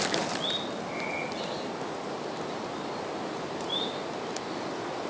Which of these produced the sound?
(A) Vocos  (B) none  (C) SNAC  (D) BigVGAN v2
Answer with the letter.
B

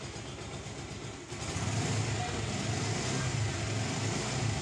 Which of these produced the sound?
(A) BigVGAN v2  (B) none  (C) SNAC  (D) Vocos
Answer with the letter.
B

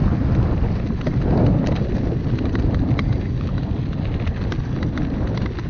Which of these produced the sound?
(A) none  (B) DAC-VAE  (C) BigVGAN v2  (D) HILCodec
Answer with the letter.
A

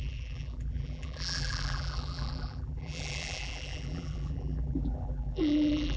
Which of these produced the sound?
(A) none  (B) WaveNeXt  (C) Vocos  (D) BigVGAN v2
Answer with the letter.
D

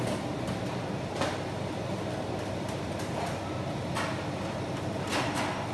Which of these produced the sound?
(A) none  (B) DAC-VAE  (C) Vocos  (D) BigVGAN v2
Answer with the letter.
A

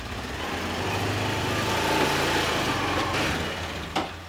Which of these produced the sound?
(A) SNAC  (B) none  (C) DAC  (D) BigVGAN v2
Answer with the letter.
B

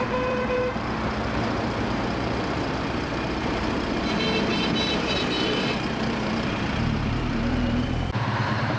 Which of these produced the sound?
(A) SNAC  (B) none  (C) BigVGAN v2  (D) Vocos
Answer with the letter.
C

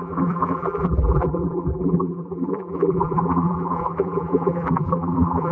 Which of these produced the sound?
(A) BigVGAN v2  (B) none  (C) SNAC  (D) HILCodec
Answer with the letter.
A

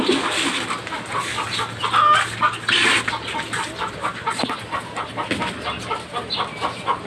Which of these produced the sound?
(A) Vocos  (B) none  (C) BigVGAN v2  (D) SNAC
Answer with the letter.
B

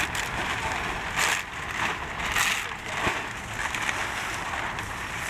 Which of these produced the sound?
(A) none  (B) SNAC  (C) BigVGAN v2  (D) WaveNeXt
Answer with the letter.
A